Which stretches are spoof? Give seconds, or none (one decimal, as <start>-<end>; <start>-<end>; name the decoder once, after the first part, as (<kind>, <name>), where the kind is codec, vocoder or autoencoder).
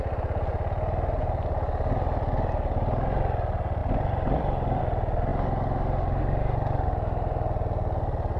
3.8-4.8 (vocoder, BigVGAN v2); 5.3-6.2